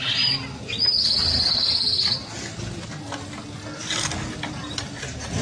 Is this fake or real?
real